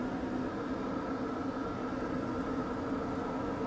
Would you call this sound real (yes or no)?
yes